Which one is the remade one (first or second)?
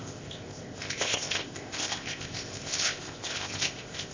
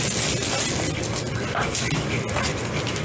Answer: first